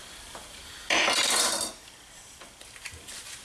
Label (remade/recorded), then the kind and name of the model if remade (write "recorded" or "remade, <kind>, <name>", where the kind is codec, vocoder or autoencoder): recorded